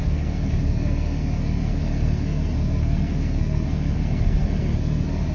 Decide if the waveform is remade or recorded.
remade